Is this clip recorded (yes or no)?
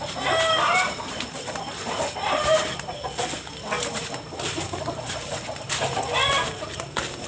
yes